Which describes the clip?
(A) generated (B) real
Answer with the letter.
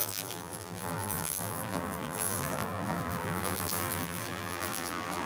A